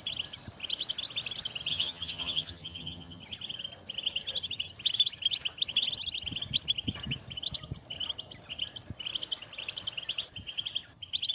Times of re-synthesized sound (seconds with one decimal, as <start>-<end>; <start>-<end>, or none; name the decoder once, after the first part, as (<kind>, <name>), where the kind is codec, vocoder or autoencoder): 1.7-3.2 (vocoder, HiFi-GAN)

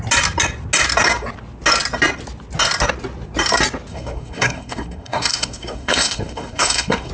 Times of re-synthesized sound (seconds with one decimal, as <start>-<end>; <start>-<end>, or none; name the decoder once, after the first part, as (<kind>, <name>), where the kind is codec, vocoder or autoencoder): 3.9-7.1 (codec, SNAC)

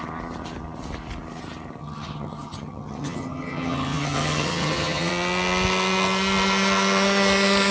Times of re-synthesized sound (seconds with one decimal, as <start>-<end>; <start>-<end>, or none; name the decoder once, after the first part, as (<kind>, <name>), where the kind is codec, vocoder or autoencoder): 1.8-5.1 (vocoder, HiFi-GAN)

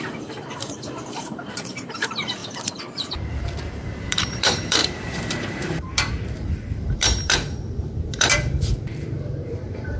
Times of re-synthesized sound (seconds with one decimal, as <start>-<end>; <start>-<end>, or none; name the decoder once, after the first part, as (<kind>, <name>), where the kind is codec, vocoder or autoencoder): 0.0-2.4 (vocoder, BigVGAN v2); 2.9-10.0

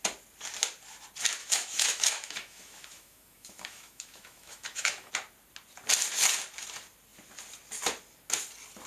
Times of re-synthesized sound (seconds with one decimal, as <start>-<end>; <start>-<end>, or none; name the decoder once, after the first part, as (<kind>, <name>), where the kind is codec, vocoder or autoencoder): 1.4-5.1 (autoencoder, DAC-VAE)

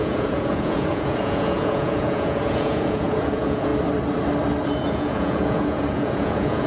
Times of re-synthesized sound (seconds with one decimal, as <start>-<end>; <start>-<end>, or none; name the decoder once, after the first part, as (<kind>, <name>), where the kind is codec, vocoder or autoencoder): 0.0-3.7 (vocoder, Vocos); 4.9-6.7

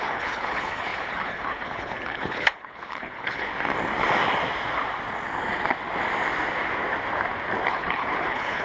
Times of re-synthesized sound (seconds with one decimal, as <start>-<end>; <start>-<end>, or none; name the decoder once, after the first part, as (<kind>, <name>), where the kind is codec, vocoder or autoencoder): 0.0-3.5 (codec, HILCodec); 7.7-8.6

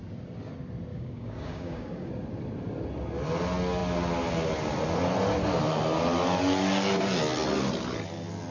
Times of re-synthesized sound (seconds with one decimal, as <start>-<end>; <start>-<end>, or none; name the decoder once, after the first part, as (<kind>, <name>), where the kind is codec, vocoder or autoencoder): 0.9-2.1 (codec, DAC)